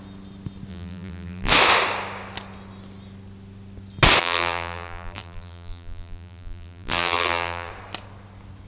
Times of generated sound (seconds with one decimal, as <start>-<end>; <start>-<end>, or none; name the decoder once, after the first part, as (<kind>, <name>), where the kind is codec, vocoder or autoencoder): 0.7-1.5 (vocoder, BigVGAN v2); 4.2-7.7